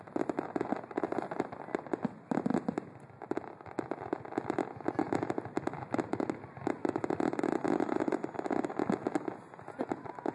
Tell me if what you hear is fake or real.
real